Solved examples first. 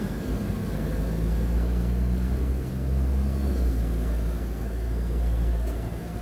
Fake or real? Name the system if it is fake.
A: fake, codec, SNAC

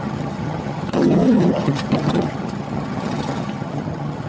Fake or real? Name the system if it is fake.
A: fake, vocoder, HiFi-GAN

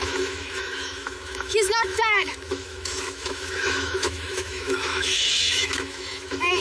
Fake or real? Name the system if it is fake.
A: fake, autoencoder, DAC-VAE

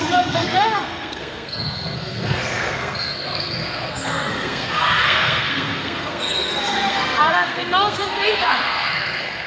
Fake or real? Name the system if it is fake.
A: fake, codec, SNAC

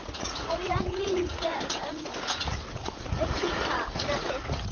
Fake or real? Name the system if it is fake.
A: fake, vocoder, Vocos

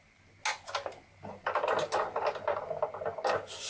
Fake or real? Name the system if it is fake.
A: real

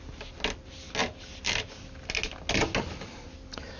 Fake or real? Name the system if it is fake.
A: real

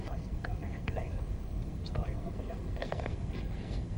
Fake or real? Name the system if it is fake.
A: fake, codec, SNAC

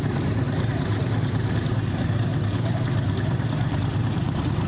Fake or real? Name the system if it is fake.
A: fake, vocoder, BigVGAN v2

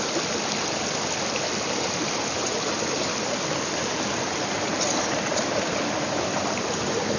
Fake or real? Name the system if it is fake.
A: real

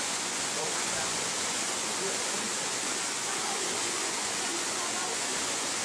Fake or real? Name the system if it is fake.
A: fake, vocoder, Vocos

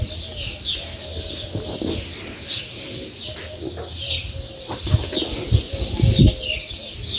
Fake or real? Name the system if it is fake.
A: real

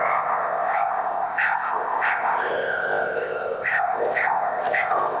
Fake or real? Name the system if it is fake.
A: fake, codec, ZipCodec